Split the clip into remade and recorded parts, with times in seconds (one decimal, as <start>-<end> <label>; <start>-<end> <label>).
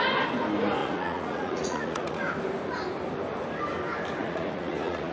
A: 0.0-0.8 recorded; 0.8-2.2 remade; 2.2-4.2 recorded; 4.2-5.1 remade